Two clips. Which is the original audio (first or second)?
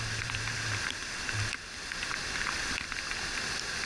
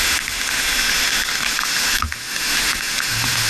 first